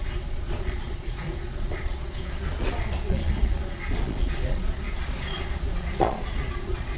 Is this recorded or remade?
remade